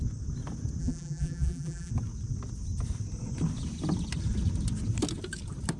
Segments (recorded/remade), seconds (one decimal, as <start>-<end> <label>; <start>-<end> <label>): 0.0-0.8 recorded; 0.8-1.9 remade; 1.9-5.8 recorded